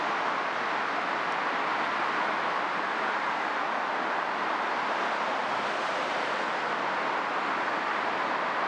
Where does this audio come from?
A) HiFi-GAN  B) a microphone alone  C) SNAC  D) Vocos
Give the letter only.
B